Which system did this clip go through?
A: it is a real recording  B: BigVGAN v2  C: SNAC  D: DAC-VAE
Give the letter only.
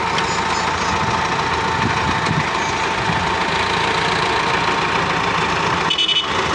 A